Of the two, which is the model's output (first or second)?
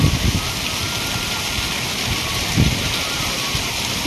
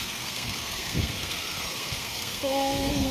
second